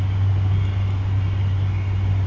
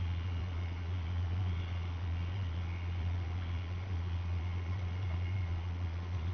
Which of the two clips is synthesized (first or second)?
second